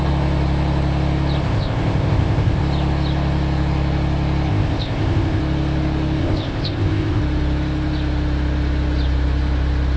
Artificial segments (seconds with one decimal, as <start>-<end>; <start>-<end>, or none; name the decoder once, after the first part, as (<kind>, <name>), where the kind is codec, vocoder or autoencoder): 1.4-2.6 (codec, ZipCodec); 4.5-5.4; 6.2-7.2